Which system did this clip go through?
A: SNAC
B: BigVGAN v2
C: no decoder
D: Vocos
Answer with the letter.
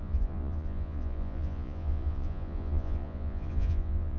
D